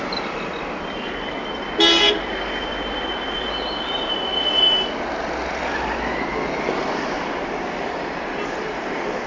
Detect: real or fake real